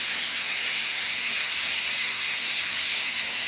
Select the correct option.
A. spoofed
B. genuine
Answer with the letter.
A